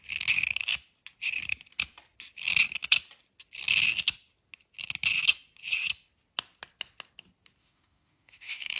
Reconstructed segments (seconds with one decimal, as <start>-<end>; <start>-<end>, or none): 7.6-8.8